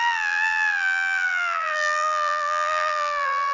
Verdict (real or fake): fake